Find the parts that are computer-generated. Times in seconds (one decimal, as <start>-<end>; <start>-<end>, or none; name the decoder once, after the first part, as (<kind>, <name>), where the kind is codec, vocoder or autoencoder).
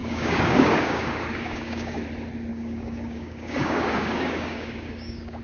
0.0-2.0 (codec, DAC); 2.5-5.4